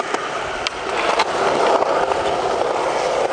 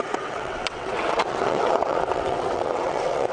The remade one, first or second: second